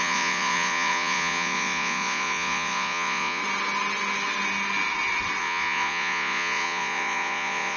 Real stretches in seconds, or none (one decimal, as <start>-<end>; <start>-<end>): 3.4-5.4